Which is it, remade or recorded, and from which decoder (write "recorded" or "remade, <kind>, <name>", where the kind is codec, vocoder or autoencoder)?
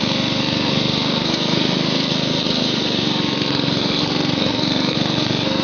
remade, codec, SNAC